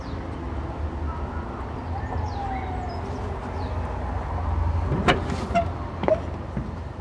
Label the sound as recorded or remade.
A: recorded